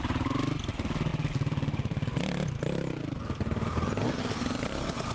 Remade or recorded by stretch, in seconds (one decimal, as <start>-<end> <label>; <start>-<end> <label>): 0.0-1.1 recorded; 1.1-4.2 remade; 4.2-5.1 recorded